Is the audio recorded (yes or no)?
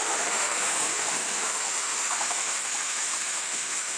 no